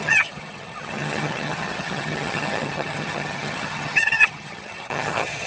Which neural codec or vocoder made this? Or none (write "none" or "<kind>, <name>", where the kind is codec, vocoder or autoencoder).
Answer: vocoder, HiFi-GAN